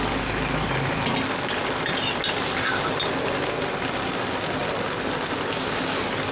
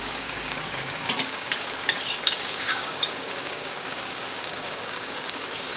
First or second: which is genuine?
first